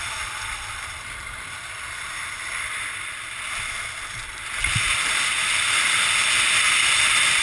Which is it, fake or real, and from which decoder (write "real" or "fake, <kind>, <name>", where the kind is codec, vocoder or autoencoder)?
real